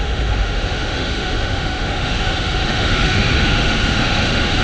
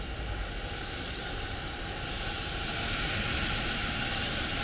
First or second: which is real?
second